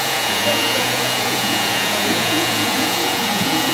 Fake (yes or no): yes